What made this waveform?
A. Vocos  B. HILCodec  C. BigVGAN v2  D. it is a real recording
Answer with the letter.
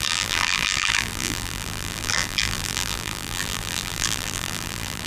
C